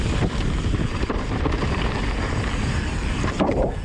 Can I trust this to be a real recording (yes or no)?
yes